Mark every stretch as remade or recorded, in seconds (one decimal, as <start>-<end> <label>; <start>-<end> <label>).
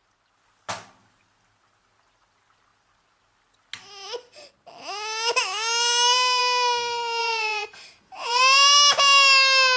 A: 0.0-7.2 recorded; 7.2-8.4 remade; 8.4-9.8 recorded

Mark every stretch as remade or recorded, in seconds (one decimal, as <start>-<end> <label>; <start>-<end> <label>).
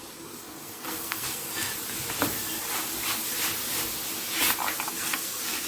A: 0.0-1.7 remade; 1.7-4.9 recorded; 4.9-5.7 remade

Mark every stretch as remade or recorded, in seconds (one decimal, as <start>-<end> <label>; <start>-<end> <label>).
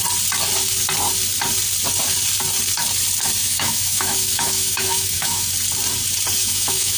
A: 0.0-3.4 recorded; 3.4-5.5 remade; 5.5-6.4 recorded; 6.4-7.0 remade